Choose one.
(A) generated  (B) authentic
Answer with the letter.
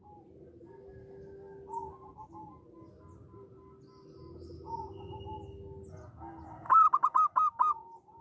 B